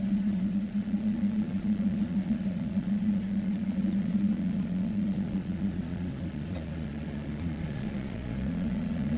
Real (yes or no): no